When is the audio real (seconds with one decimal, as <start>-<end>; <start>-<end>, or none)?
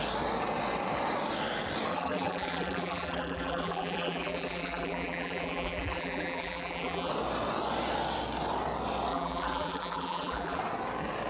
0.0-1.9; 7.1-9.1; 10.6-11.3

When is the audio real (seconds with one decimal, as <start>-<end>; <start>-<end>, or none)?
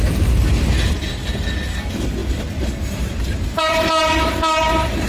0.0-5.1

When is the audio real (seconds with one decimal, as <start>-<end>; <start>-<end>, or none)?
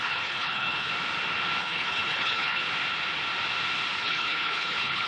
0.9-1.6; 2.6-4.0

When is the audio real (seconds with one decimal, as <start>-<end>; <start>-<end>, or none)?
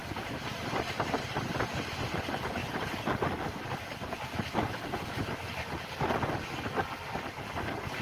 0.0-8.0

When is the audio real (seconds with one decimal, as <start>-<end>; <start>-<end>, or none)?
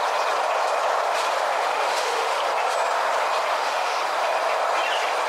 0.0-1.5; 2.4-3.5; 4.0-5.3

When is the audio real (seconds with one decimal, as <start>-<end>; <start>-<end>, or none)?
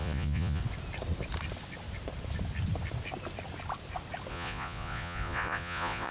0.6-4.3